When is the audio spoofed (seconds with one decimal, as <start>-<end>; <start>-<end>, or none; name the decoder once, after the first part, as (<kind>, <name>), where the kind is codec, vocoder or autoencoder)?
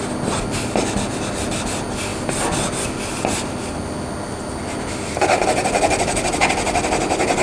none